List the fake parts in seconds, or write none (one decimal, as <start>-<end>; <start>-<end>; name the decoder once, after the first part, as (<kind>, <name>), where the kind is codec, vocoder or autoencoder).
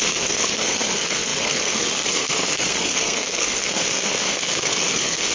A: 0.0-5.3 (codec, SNAC)